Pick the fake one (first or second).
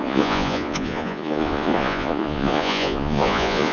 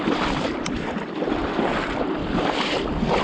first